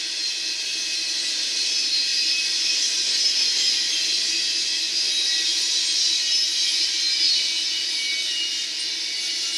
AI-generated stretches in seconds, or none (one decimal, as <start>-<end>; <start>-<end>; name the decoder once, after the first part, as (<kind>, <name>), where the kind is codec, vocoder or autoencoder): none